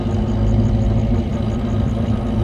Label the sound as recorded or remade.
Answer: recorded